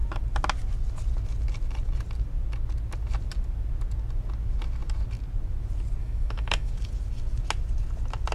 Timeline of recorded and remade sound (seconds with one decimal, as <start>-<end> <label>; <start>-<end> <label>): 0.0-6.0 recorded; 6.0-6.7 remade; 6.7-8.3 recorded